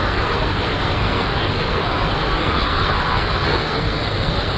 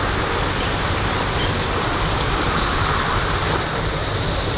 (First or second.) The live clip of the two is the second